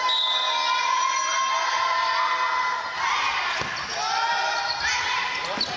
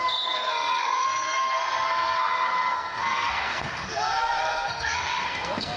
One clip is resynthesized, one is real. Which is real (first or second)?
first